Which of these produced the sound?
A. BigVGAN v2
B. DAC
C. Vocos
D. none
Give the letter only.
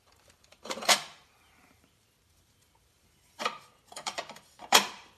A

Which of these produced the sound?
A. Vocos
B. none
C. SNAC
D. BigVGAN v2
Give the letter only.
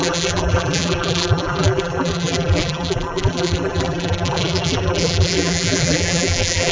D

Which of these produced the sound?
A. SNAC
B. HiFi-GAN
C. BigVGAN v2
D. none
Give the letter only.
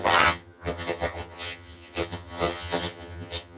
B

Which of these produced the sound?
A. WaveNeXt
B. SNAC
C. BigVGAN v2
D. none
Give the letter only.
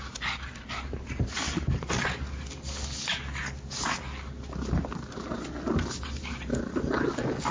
D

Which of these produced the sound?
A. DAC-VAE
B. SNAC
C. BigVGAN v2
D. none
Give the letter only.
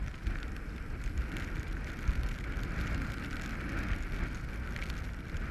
D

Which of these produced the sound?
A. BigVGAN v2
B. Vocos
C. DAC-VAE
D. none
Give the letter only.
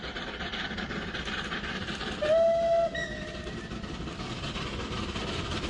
D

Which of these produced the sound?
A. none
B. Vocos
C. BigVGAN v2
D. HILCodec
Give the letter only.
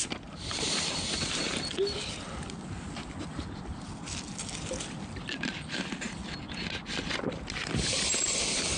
A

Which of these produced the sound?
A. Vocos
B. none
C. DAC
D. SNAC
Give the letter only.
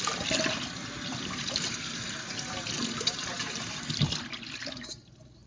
B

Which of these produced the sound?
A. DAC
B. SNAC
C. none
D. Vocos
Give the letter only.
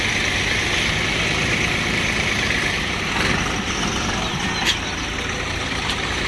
C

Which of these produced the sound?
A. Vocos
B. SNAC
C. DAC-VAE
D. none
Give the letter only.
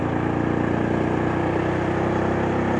D